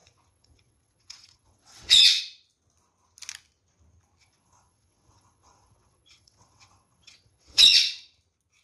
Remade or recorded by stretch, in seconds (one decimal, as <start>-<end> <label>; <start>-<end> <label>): 0.0-2.2 remade; 2.2-4.2 recorded; 4.2-7.9 remade; 7.9-8.6 recorded